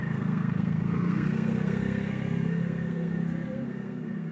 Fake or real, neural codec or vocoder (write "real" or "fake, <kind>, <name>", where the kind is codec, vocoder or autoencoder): fake, codec, SNAC